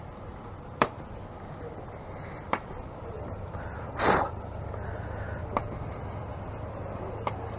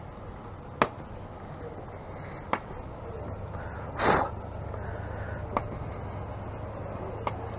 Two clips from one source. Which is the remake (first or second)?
first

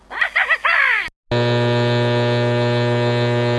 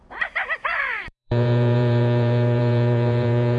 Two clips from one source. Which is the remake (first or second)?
second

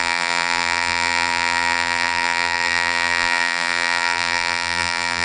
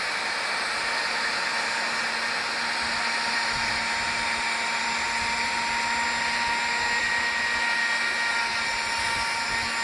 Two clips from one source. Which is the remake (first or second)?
first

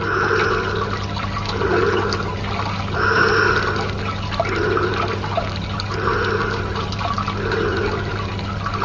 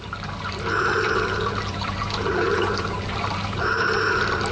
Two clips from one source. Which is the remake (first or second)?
second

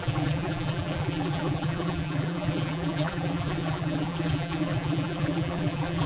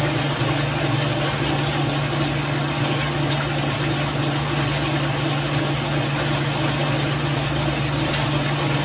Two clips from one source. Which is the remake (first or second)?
first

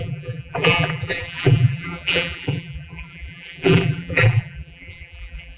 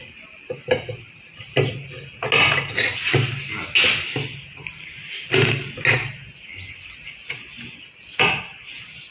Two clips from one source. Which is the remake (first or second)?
first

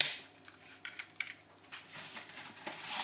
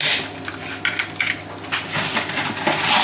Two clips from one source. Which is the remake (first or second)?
first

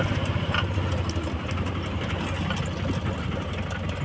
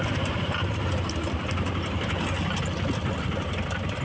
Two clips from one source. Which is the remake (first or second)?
second